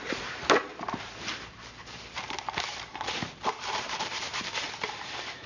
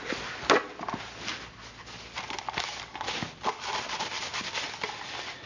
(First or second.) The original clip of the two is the second